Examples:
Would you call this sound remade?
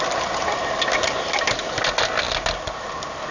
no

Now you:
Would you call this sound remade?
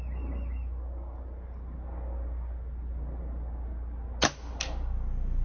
no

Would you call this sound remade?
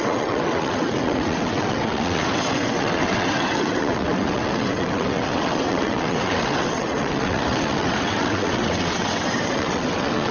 yes